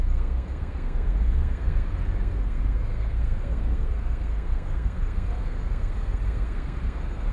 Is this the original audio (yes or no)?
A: no